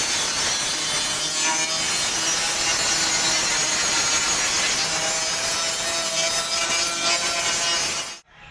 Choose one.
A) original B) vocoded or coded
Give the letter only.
A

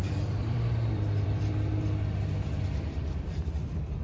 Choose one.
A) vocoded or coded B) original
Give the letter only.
A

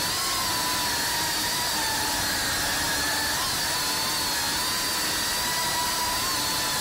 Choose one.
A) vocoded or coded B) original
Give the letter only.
B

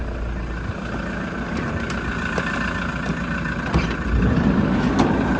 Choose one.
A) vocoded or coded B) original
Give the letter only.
B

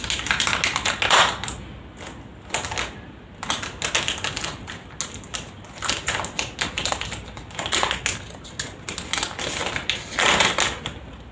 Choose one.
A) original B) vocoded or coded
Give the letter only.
A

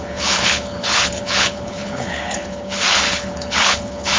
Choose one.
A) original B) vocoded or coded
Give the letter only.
B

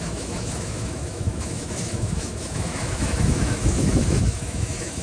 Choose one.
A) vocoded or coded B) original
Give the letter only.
A